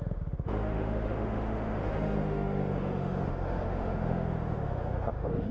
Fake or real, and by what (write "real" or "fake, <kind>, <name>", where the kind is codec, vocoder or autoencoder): fake, autoencoder, DAC-VAE